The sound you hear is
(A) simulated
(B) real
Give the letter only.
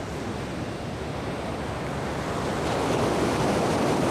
B